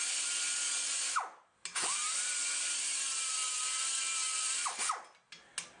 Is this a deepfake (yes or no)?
no